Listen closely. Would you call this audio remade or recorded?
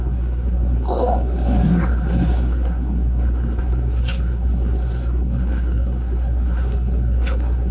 remade